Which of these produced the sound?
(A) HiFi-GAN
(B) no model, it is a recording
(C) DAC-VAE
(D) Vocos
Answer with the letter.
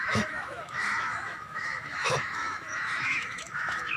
C